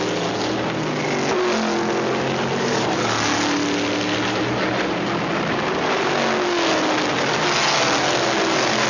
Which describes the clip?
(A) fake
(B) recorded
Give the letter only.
B